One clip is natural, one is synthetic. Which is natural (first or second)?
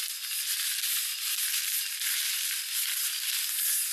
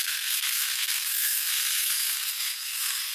first